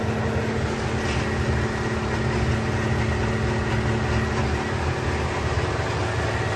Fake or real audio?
real